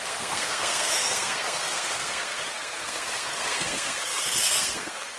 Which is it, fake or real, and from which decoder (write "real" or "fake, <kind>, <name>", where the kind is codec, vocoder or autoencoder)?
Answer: fake, codec, SNAC